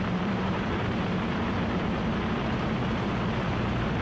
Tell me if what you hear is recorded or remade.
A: remade